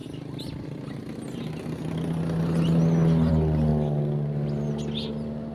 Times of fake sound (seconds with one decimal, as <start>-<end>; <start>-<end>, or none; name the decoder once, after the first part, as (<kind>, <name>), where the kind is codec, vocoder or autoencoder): none